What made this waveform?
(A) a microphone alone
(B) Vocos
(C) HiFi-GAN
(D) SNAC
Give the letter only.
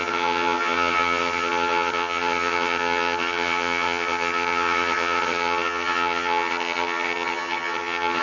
C